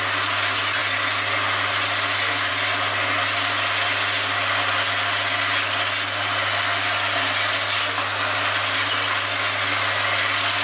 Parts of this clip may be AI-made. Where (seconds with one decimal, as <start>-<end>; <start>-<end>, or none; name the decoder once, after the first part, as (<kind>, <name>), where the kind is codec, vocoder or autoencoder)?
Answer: none